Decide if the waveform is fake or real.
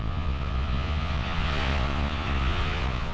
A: fake